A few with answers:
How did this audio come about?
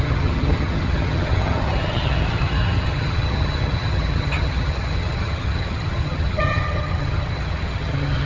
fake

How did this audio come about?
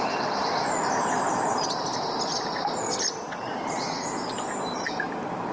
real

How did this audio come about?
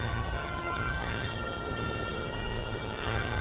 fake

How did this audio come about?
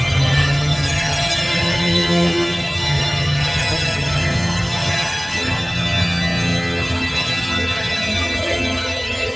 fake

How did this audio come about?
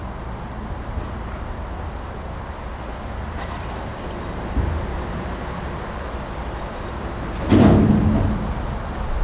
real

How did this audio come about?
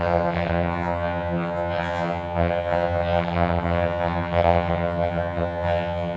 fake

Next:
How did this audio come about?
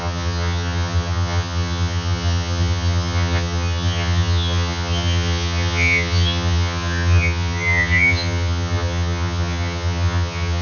fake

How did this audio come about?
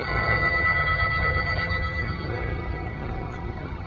fake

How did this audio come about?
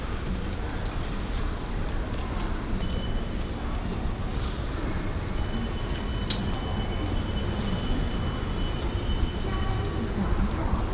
real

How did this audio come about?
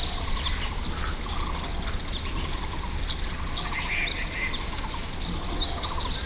real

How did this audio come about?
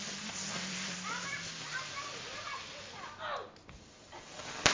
real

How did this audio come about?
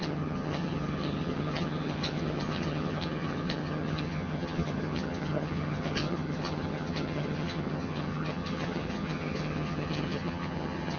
fake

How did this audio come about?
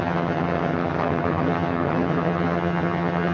fake